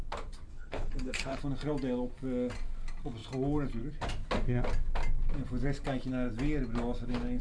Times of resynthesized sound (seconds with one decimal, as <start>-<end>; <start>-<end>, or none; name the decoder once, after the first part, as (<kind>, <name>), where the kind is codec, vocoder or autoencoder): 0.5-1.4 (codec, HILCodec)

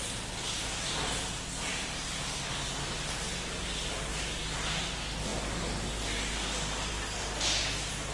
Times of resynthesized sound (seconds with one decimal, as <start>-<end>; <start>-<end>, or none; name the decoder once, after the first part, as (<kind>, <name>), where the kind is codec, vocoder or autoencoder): none

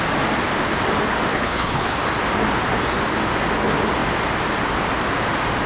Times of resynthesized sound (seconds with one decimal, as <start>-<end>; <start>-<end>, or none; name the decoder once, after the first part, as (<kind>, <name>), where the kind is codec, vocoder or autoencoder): 1.3-2.0 (codec, HILCodec)

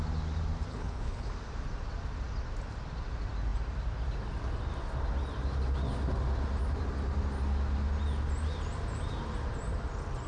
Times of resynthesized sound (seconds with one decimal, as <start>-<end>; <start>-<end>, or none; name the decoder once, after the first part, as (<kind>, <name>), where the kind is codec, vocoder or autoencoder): 0.7-1.3 (codec, HILCodec)